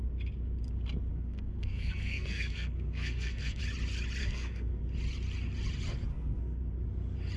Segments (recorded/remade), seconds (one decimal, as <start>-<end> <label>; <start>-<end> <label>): 0.0-1.1 recorded; 1.1-3.6 remade; 3.6-4.2 recorded; 4.2-4.8 remade; 4.8-6.1 recorded; 6.1-6.6 remade; 6.6-7.4 recorded